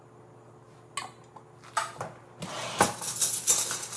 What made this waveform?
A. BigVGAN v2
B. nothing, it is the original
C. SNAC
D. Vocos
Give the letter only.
B